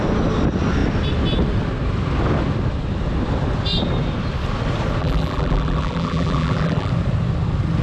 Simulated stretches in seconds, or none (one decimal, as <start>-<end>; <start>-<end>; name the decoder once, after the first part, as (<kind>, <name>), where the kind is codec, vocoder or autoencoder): 5.0-6.9 (vocoder, BigVGAN v2)